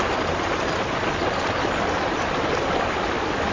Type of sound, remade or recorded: recorded